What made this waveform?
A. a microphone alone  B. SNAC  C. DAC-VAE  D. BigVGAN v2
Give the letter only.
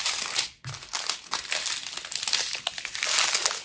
A